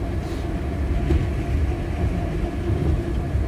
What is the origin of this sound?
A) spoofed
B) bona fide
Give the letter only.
B